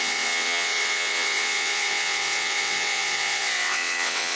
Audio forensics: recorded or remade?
remade